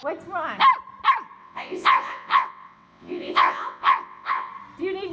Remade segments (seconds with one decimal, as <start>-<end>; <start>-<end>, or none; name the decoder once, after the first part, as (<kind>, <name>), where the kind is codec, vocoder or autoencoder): 1.4-4.5 (vocoder, WaveNeXt)